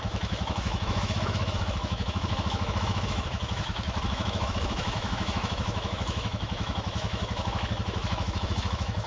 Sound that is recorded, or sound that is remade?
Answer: remade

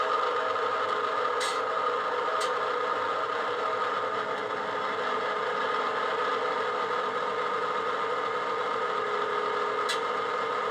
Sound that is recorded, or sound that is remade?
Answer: recorded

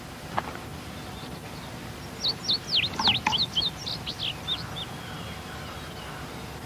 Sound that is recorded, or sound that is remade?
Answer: recorded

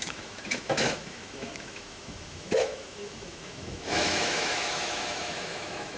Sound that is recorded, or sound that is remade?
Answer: remade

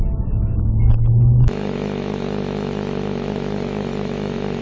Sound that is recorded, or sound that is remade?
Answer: remade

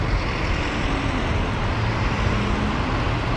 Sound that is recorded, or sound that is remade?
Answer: recorded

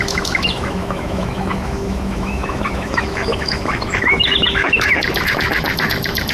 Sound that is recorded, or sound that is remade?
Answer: remade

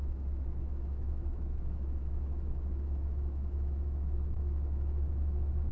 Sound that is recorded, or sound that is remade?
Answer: remade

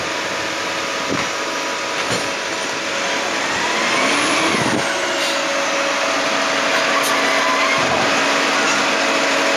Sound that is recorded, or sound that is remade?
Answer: recorded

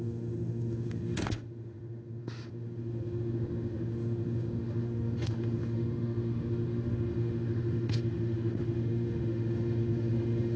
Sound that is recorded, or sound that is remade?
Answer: remade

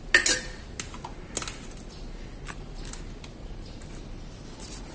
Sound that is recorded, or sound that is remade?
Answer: recorded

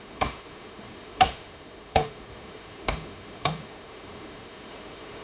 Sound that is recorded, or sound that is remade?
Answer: remade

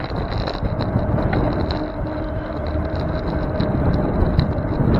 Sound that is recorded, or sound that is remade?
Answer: recorded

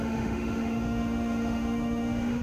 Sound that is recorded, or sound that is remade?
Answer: remade